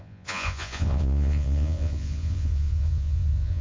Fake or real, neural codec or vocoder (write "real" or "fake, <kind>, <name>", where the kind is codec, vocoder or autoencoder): fake, vocoder, Vocos